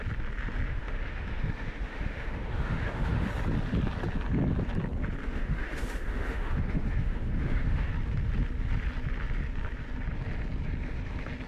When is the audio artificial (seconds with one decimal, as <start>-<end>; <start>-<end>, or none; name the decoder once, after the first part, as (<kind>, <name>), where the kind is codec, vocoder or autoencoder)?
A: 0.7-3.3 (autoencoder, DAC-VAE); 5.2-7.9